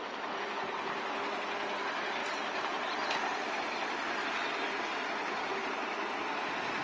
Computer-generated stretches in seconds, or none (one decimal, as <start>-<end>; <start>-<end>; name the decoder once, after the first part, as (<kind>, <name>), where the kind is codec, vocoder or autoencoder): 2.2-3.2 (vocoder, BigVGAN v2)